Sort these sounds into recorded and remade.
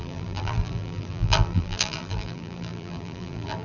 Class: remade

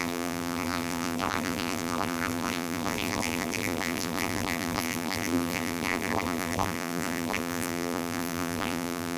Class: remade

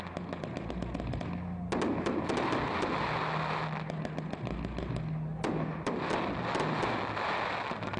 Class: recorded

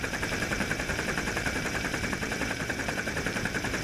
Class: remade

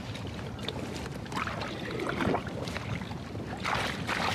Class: recorded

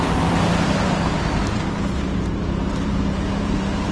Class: remade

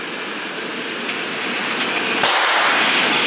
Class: recorded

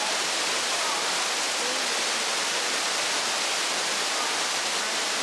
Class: recorded